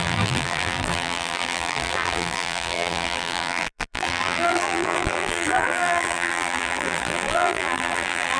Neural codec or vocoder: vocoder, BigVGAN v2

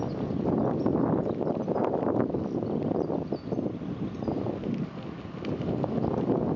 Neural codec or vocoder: none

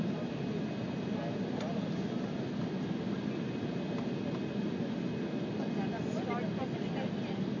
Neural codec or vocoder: none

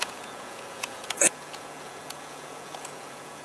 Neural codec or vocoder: vocoder, Vocos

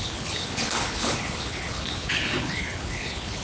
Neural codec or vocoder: codec, HILCodec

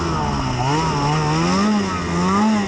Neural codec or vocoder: none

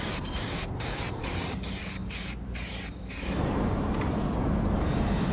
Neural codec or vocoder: vocoder, BigVGAN v2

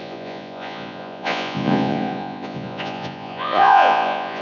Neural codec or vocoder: vocoder, Vocos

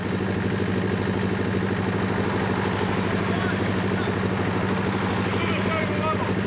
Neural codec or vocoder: none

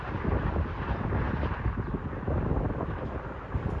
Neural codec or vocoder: none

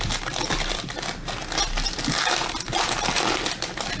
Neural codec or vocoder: none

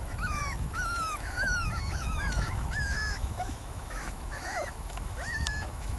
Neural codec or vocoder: autoencoder, DAC-VAE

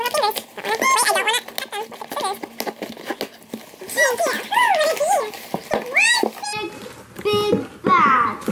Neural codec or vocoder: none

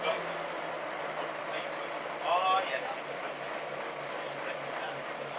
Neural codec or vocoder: none